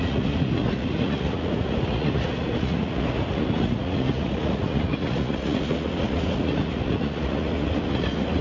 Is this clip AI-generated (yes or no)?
yes